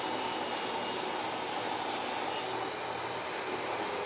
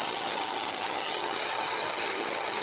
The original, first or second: first